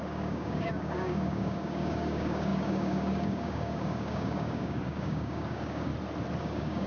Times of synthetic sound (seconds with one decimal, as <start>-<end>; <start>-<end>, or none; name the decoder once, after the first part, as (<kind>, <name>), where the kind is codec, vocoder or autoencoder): 0.0-5.9 (codec, DAC); 6.4-6.9